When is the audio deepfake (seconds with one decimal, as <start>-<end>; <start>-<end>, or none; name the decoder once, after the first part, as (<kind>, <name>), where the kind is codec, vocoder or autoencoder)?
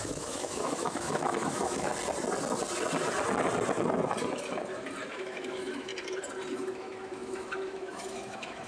0.0-1.9 (autoencoder, DAC-VAE); 5.1-5.9; 6.5-8.7